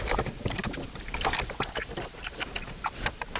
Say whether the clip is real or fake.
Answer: real